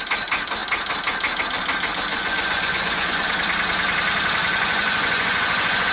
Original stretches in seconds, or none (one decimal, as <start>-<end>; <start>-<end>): 0.0-2.1; 3.3-4.4